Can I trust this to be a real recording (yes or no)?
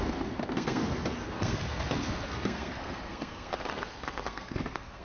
no